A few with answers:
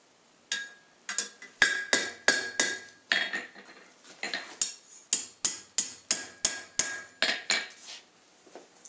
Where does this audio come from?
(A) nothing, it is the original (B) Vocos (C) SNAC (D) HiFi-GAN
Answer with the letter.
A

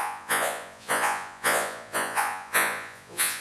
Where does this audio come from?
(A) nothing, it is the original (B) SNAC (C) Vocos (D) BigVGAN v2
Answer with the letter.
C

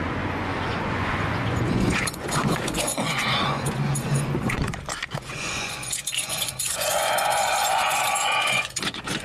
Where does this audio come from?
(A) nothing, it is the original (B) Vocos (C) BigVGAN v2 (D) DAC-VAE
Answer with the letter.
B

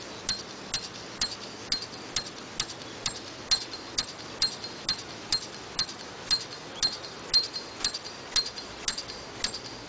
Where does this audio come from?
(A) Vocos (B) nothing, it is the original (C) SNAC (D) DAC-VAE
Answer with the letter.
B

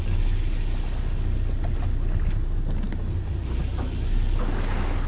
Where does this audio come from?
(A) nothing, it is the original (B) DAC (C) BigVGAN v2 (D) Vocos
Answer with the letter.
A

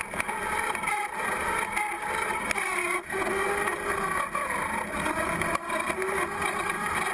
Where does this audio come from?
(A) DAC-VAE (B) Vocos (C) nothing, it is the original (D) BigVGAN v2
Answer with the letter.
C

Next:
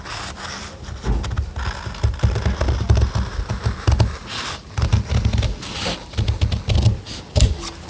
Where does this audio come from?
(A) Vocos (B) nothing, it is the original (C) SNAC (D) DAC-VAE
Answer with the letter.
B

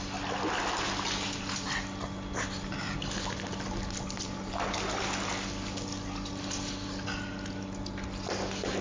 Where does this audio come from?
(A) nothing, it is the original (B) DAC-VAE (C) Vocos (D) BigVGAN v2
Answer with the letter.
A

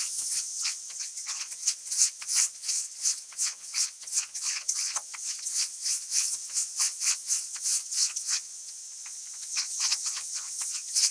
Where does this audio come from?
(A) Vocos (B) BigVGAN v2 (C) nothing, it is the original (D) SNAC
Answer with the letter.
A